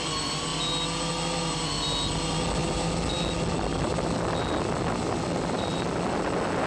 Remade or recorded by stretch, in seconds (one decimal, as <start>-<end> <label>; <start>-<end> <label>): 0.0-6.7 recorded